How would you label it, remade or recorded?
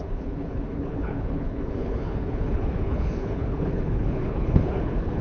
remade